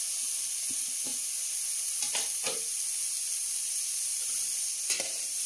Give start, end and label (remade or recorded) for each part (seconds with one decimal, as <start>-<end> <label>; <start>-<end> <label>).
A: 0.0-5.5 recorded